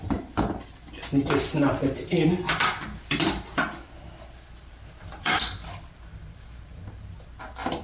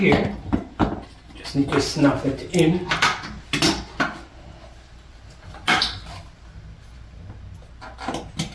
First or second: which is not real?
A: first